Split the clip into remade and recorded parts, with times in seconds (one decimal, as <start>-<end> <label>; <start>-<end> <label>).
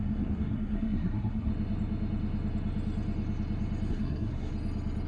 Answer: 0.0-1.5 remade; 1.5-3.9 recorded; 3.9-4.5 remade; 4.5-5.1 recorded